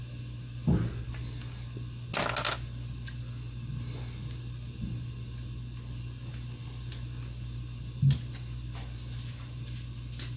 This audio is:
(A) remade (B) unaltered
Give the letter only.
B